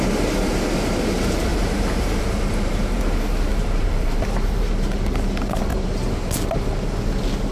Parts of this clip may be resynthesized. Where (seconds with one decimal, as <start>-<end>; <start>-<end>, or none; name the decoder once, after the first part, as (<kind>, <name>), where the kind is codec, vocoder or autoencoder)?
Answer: 1.5-3.0 (vocoder, BigVGAN v2); 3.5-4.8

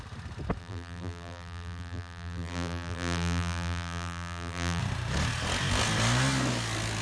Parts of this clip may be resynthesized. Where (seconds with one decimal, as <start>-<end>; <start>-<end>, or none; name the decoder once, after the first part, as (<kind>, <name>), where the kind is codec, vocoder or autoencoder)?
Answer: 0.6-4.8 (vocoder, BigVGAN v2)

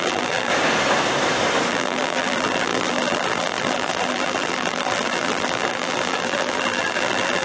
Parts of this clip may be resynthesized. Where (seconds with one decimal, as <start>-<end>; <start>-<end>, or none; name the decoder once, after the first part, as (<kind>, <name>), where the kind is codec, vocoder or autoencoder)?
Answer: 0.0-0.5 (vocoder, BigVGAN v2); 1.7-7.4

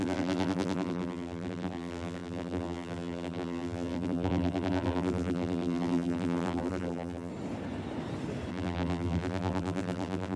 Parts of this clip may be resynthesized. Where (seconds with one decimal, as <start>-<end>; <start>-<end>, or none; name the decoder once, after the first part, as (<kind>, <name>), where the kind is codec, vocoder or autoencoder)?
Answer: 0.0-7.3 (vocoder, BigVGAN v2); 8.5-10.4

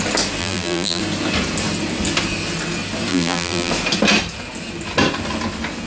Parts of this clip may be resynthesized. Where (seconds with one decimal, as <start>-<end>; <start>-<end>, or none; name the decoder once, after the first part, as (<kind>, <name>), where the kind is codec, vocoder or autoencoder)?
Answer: 0.4-1.0 (vocoder, BigVGAN v2); 3.1-3.7

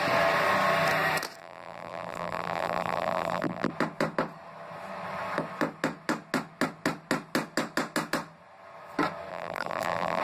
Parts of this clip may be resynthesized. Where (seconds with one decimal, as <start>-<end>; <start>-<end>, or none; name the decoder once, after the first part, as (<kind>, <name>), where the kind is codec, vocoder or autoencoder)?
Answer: 1.4-3.7 (vocoder, BigVGAN v2); 9.3-10.2